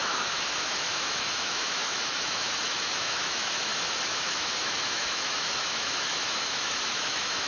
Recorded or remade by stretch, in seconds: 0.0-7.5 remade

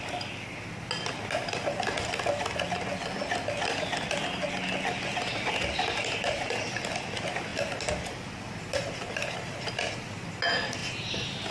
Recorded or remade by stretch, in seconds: 0.0-11.5 recorded

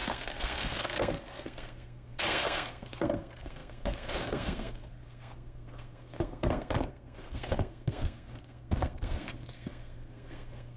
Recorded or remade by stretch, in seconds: 0.0-10.8 remade

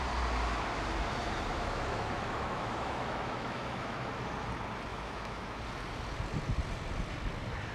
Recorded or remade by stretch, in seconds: 0.0-1.5 recorded; 1.5-4.1 remade; 4.1-4.9 recorded; 4.9-5.6 remade; 5.6-7.7 recorded

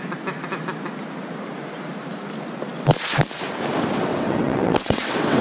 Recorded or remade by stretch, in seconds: 0.0-4.1 recorded; 4.1-5.4 remade

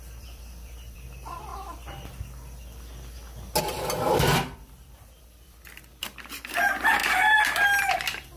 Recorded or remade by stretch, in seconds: 0.0-1.5 remade; 1.5-3.6 recorded; 3.6-7.0 remade; 7.0-7.8 recorded; 7.8-8.4 remade

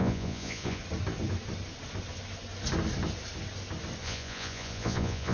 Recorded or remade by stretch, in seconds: 0.0-0.8 remade; 0.8-4.0 recorded; 4.0-5.3 remade

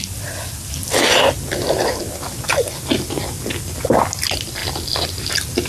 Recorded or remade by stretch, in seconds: 0.0-5.7 recorded